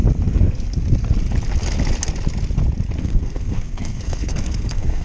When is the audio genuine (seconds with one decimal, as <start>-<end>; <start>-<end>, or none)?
0.0-3.0